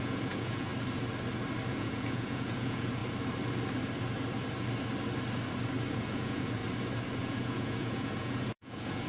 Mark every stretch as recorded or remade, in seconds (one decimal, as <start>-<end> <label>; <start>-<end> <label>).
0.0-0.7 remade; 0.7-1.7 recorded; 1.7-3.0 remade; 3.0-5.9 recorded; 5.9-6.6 remade; 6.6-7.2 recorded; 7.2-9.1 remade